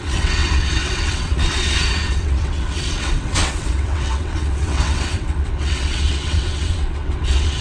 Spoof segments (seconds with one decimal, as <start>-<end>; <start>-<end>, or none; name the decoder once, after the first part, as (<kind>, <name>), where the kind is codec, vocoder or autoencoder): 0.0-7.6 (vocoder, WaveNeXt)

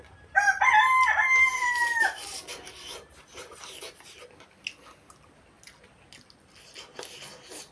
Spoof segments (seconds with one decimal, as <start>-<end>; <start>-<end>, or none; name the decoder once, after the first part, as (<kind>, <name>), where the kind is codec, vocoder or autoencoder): 0.7-1.2 (vocoder, BigVGAN v2); 2.5-3.9

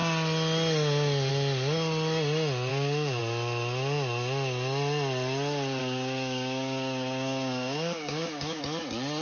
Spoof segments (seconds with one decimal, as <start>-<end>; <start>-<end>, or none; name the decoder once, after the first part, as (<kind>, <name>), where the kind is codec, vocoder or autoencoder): 2.7-3.2 (codec, DAC); 5.8-8.6

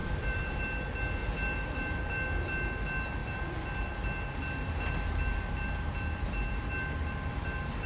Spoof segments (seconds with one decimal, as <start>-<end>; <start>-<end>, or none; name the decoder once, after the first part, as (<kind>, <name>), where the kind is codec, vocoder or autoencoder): 0.0-0.6 (vocoder, BigVGAN v2); 1.2-1.8; 3.2-6.7

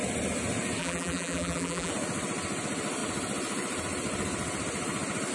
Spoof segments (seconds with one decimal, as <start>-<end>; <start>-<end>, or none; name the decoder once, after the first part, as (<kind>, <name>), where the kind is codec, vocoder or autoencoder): 0.8-1.9 (vocoder, BigVGAN v2)

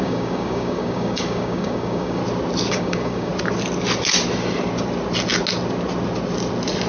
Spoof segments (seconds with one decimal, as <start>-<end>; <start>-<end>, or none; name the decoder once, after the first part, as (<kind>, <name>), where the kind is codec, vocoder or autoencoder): 0.0-2.2 (codec, DAC); 2.7-3.3